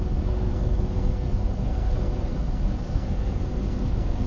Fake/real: fake